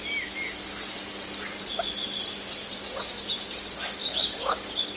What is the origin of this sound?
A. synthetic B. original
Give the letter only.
B